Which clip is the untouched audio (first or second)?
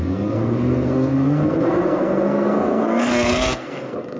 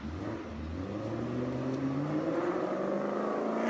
second